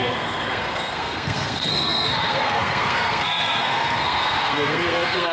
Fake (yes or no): yes